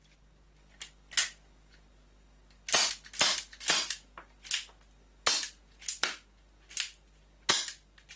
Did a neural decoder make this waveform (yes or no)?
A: no